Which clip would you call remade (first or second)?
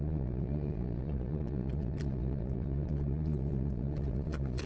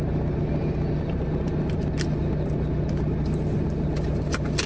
first